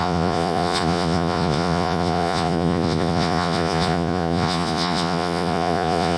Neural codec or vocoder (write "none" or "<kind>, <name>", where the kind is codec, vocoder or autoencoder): vocoder, Vocos